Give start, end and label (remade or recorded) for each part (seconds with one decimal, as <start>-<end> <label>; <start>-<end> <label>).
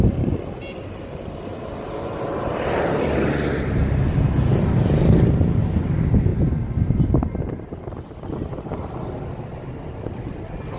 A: 0.0-10.8 recorded